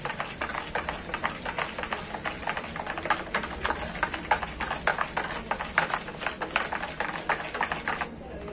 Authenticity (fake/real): real